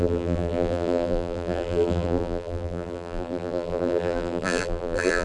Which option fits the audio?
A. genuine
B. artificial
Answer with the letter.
B